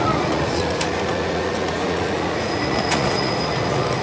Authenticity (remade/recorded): remade